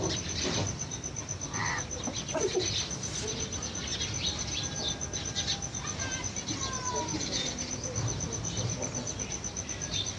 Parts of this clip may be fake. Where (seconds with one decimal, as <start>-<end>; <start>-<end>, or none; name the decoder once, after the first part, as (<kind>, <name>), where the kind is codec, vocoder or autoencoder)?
none